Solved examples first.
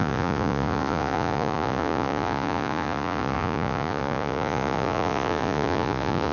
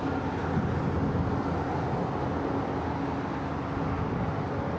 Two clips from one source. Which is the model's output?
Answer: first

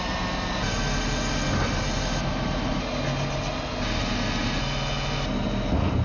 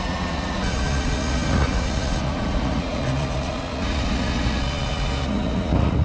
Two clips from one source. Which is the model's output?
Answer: second